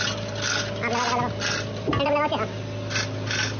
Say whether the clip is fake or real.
real